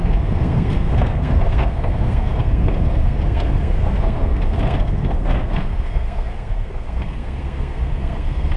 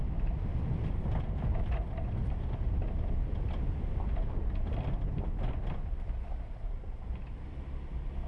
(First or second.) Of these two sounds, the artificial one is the first